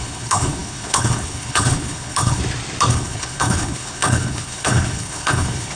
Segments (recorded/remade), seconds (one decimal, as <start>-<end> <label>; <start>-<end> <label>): 0.0-2.4 remade; 2.4-2.9 recorded; 2.9-5.8 remade